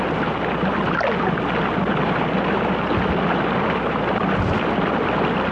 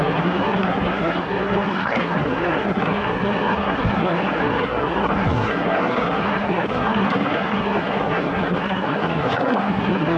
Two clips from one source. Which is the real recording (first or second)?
first